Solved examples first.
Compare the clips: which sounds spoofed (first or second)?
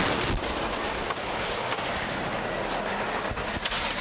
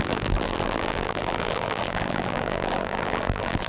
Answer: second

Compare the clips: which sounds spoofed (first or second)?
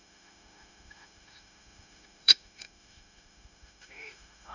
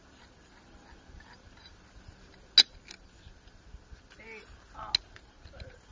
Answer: first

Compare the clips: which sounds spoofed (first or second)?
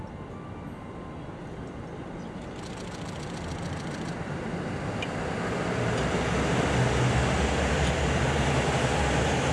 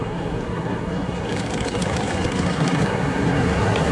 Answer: second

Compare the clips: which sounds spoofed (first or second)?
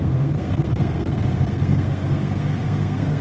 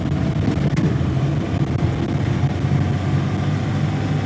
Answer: first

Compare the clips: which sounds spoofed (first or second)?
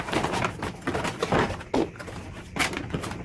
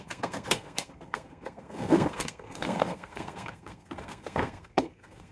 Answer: second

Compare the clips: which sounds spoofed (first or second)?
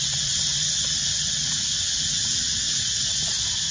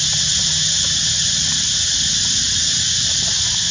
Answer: first